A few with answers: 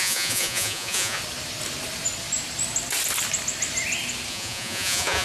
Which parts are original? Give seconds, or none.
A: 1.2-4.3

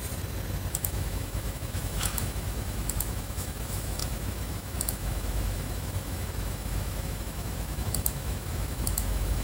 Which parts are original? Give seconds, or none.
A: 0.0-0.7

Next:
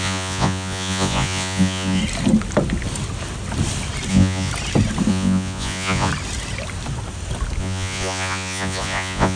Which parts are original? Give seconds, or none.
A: 2.0-4.1; 4.5-5.1; 6.1-7.6

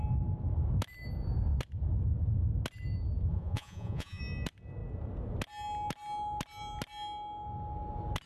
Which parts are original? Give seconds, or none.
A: 0.0-3.3; 4.2-8.3

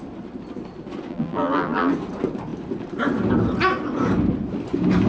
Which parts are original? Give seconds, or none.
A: 0.0-1.1; 1.9-5.1

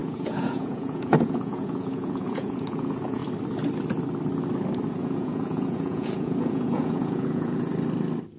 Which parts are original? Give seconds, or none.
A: 3.2-4.9; 7.7-8.4